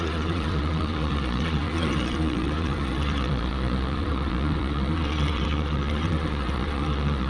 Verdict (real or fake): fake